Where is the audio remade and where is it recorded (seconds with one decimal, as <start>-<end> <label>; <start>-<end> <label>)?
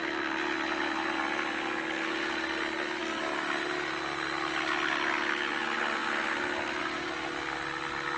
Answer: 0.0-8.2 recorded